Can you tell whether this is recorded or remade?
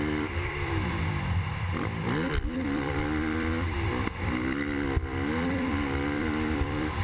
remade